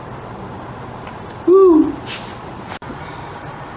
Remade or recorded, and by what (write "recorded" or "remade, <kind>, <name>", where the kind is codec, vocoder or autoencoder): recorded